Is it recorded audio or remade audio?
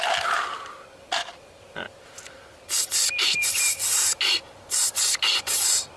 recorded